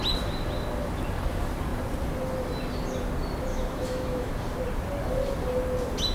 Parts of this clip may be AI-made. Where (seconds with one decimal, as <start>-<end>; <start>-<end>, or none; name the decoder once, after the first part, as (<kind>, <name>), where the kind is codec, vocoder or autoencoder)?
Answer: 3.5-4.3 (autoencoder, DAC-VAE)